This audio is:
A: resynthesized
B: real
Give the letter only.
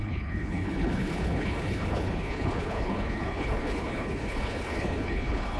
A